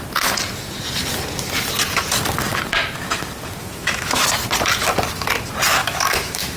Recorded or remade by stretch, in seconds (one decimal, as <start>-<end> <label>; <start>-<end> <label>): 0.0-3.6 recorded; 3.6-4.2 remade; 4.2-5.8 recorded; 5.8-6.6 remade